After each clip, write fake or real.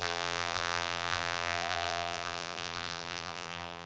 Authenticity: fake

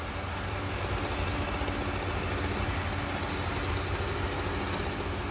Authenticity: real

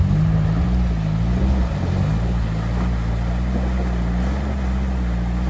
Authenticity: real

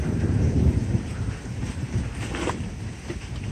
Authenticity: fake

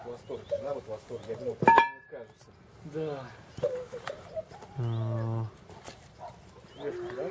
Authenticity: real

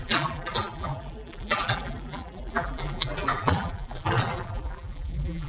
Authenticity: fake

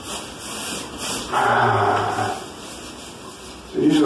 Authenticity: real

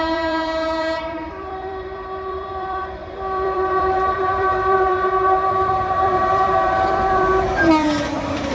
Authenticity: fake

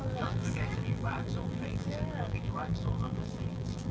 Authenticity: fake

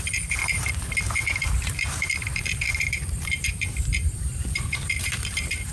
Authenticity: fake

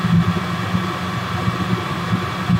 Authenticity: real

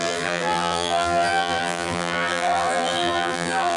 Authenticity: fake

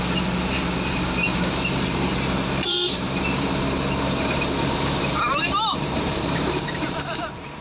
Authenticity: fake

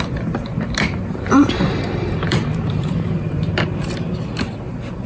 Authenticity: fake